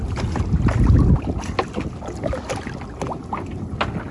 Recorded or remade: recorded